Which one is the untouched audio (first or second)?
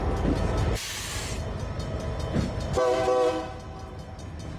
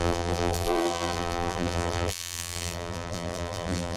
first